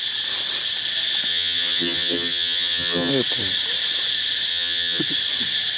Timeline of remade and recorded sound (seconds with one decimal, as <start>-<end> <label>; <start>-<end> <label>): 0.0-1.3 recorded; 1.3-3.1 remade; 3.1-4.5 recorded; 4.5-5.0 remade; 5.0-5.8 recorded